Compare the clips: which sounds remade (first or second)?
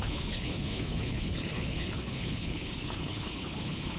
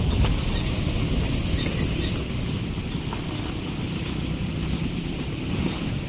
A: first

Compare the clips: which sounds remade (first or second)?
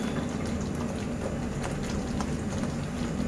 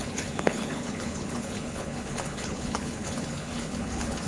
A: second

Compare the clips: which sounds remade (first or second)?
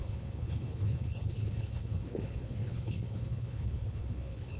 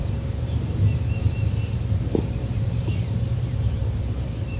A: first